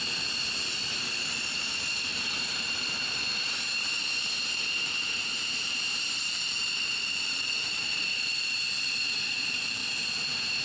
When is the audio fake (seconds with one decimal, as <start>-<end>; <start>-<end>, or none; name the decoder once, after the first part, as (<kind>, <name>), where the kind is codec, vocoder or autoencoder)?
0.0-9.8 (vocoder, BigVGAN v2)